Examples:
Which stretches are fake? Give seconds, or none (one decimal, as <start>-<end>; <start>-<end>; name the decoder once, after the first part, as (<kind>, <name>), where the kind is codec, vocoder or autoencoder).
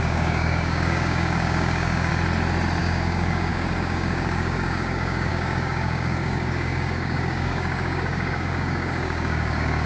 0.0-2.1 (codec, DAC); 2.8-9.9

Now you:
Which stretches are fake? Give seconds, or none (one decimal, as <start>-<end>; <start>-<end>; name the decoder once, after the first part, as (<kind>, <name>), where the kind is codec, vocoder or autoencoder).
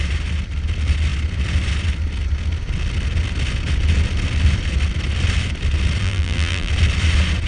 6.0-6.7 (vocoder, BigVGAN v2)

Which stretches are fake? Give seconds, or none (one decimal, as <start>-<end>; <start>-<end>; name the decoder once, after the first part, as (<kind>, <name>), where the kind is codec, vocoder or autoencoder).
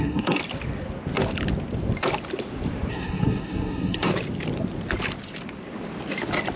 0.0-0.4 (codec, SNAC); 2.9-4.1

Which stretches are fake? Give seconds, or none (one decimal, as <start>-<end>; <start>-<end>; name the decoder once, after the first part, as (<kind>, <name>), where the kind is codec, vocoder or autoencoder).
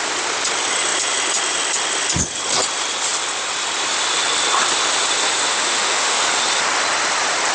5.5-6.2 (autoencoder, DAC-VAE)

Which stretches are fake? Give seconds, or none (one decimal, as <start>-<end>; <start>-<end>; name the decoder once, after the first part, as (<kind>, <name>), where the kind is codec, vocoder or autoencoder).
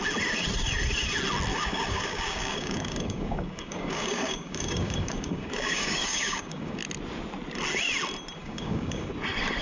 1.5-6.8 (codec, DAC); 8.4-9.1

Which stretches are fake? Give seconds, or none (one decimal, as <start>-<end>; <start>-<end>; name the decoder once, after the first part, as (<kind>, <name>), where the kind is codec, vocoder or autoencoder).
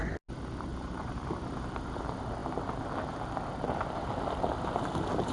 0.7-1.4 (vocoder, BigVGAN v2)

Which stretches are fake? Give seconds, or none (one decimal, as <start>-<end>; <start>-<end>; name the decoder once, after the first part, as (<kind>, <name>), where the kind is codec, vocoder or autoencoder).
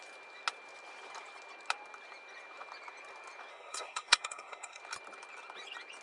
3.5-4.8 (codec, SNAC)